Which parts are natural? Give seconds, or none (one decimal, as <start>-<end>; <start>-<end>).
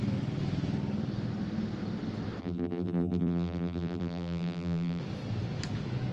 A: 0.0-2.4; 5.0-6.1